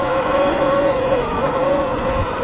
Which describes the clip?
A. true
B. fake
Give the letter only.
B